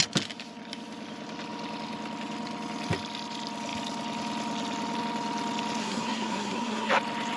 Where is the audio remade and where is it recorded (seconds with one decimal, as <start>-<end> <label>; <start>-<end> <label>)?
0.0-5.8 recorded; 5.8-6.9 remade; 6.9-7.4 recorded